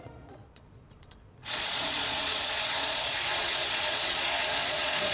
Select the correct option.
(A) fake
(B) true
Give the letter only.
A